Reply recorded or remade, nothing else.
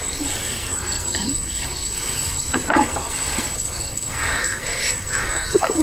remade